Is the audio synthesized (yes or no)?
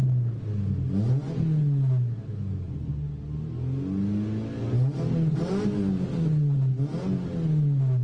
no